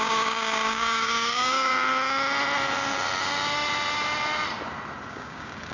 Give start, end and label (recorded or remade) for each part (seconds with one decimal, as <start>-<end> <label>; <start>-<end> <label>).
0.0-1.7 remade; 1.7-5.1 recorded; 5.1-5.7 remade